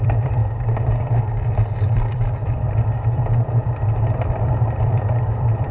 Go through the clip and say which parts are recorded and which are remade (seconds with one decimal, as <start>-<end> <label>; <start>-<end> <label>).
0.0-0.4 remade; 0.4-1.2 recorded; 1.2-5.7 remade